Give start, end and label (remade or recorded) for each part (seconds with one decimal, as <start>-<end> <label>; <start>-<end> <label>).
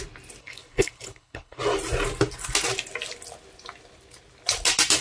0.0-0.4 recorded; 0.4-1.6 remade; 1.6-5.0 recorded